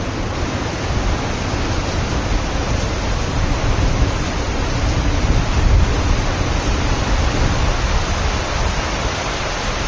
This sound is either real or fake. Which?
real